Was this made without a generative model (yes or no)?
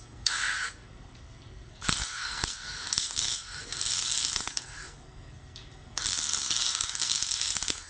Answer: no